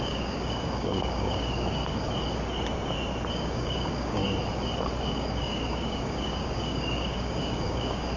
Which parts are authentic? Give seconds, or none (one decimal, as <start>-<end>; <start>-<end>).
1.8-3.3; 4.2-5.0